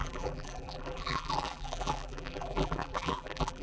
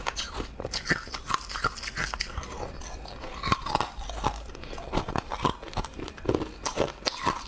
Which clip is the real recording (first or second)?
second